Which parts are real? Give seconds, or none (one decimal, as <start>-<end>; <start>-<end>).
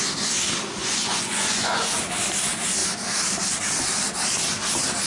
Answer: 0.0-0.8; 2.0-5.1